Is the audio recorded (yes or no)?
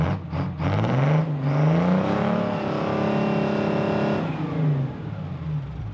yes